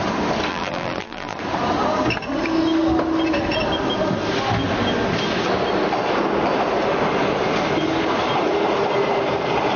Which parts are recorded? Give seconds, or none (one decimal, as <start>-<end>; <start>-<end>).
0.0-0.5; 1.4-9.8